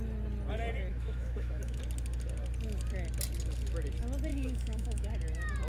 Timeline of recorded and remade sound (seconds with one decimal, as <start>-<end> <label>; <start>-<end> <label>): 0.0-0.9 recorded; 0.9-1.8 remade; 1.8-4.3 recorded; 4.3-5.1 remade; 5.1-5.7 recorded